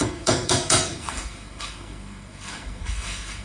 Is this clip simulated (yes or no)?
yes